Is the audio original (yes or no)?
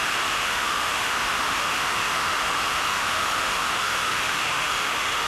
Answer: no